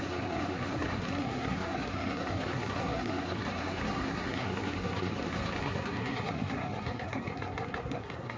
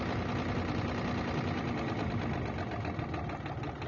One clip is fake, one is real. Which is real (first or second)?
second